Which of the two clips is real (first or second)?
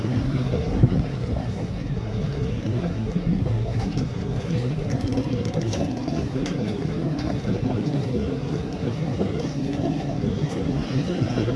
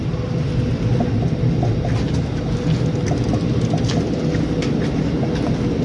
second